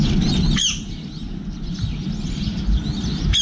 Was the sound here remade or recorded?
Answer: recorded